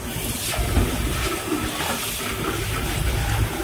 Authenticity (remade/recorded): recorded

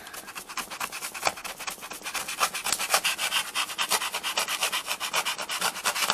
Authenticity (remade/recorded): recorded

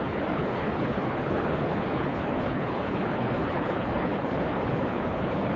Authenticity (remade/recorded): remade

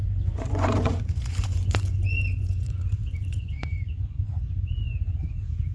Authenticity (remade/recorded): remade